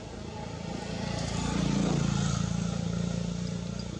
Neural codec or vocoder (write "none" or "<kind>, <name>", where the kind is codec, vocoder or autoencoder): none